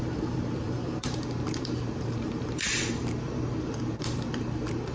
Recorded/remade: remade